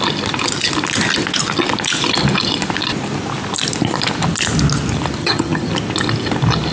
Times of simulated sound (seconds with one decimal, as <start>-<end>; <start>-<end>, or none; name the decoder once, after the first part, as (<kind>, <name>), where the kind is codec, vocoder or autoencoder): 5.2-5.7 (vocoder, HiFi-GAN)